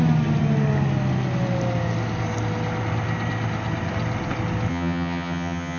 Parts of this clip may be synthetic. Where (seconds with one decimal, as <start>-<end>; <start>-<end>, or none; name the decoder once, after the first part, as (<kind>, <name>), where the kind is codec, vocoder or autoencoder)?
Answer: 4.7-5.8 (vocoder, HiFi-GAN)

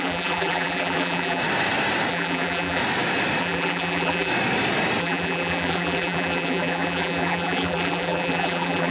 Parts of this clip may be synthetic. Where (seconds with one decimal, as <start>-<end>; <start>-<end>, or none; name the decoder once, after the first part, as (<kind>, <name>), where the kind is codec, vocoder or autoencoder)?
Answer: 0.0-1.4 (vocoder, BigVGAN v2); 2.1-2.8; 3.4-4.3; 5.0-8.9

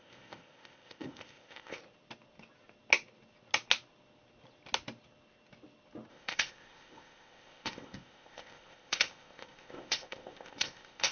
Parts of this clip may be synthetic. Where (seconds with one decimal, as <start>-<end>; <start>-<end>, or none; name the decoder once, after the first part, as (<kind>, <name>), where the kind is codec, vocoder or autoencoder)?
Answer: 0.0-1.8 (codec, ZipCodec); 6.1-11.1

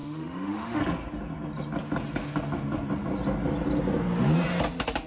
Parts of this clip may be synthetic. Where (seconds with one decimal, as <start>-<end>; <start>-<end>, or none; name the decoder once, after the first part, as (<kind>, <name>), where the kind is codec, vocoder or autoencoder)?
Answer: 0.0-0.8 (autoencoder, DAC-VAE)

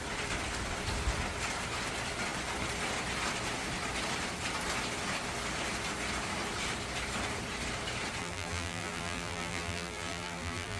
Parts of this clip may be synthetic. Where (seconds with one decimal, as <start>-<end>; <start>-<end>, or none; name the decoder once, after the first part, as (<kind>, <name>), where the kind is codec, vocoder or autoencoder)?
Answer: 8.2-10.8 (vocoder, BigVGAN v2)